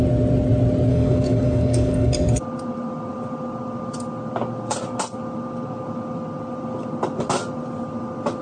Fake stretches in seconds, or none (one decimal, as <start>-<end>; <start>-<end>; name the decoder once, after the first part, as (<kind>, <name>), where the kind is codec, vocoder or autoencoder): 0.9-2.4 (codec, DAC)